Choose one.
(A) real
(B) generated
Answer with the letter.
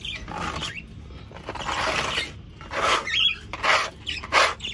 A